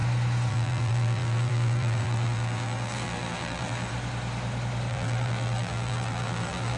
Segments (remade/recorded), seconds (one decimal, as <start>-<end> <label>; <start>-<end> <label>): 0.0-0.5 recorded; 0.5-3.9 remade; 3.9-4.9 recorded; 4.9-6.8 remade